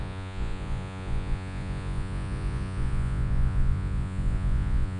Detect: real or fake fake